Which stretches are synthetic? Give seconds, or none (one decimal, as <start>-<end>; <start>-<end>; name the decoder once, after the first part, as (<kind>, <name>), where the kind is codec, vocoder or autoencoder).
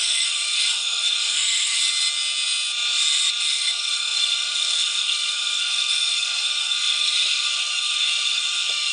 0.0-1.8 (codec, SNAC); 3.5-8.9